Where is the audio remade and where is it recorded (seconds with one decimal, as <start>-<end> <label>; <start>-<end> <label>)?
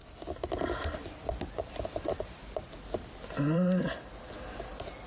0.0-1.4 remade; 1.4-1.9 recorded; 1.9-4.1 remade; 4.1-5.1 recorded